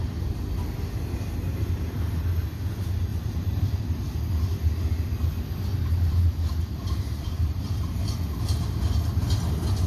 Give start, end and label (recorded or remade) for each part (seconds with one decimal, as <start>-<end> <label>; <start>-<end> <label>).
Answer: 0.0-3.1 recorded; 3.1-3.8 remade; 3.8-5.7 recorded; 5.7-8.0 remade; 8.0-9.9 recorded